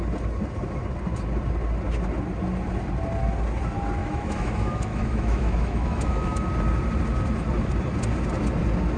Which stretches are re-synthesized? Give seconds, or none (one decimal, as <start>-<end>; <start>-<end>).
4.0-6.5